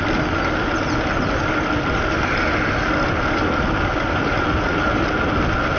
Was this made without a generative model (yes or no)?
yes